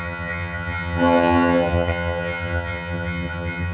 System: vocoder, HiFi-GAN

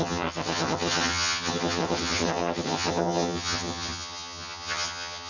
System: vocoder, HiFi-GAN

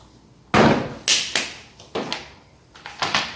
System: none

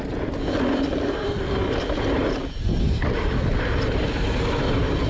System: none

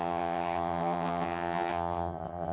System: vocoder, HiFi-GAN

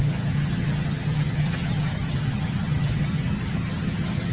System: vocoder, HiFi-GAN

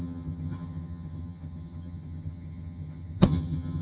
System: vocoder, HiFi-GAN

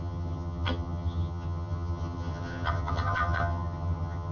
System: vocoder, HiFi-GAN